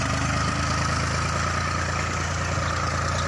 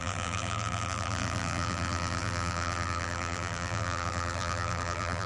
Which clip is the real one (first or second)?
first